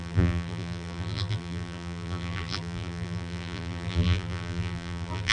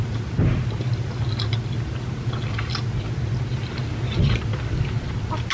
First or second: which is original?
second